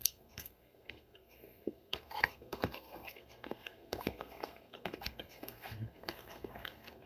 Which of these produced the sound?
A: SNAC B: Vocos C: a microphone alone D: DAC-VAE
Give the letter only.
A